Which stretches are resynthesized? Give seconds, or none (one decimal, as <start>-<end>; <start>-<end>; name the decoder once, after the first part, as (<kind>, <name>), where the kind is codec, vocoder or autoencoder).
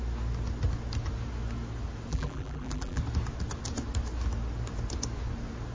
2.1-3.0 (vocoder, BigVGAN v2)